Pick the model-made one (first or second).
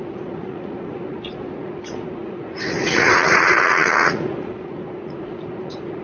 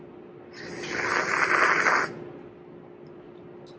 first